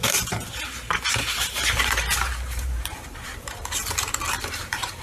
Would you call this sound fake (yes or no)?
yes